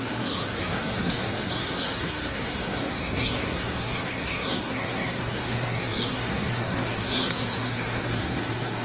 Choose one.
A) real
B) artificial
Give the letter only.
B